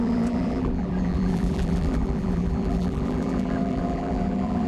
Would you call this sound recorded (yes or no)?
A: no